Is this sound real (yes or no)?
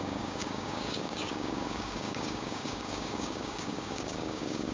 no